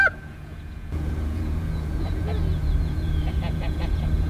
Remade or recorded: remade